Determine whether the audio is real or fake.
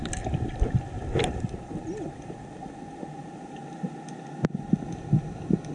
real